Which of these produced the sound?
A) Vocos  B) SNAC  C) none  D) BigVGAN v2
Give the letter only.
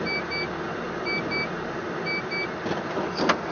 C